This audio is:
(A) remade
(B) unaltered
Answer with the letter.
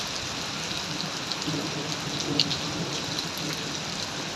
B